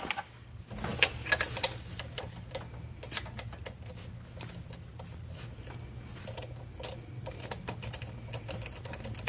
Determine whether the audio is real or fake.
real